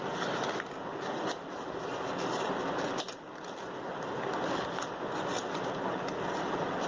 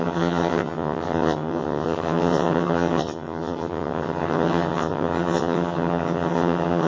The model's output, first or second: second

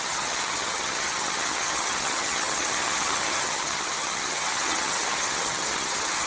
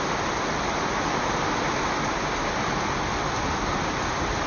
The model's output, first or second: first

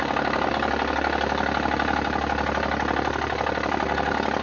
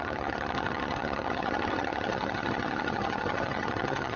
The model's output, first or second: second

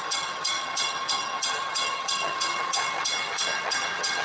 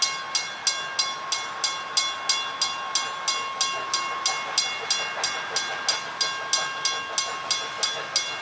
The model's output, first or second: first